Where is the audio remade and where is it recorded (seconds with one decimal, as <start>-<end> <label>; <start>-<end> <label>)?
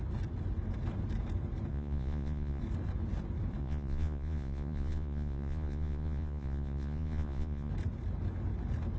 0.0-1.7 recorded; 1.7-2.6 remade; 2.6-3.6 recorded; 3.6-7.7 remade; 7.7-9.0 recorded